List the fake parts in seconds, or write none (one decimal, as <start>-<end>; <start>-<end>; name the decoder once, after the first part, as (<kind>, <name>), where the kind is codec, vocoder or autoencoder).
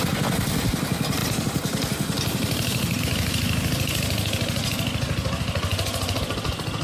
none